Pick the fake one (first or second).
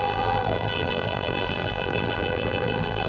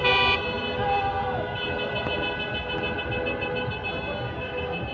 first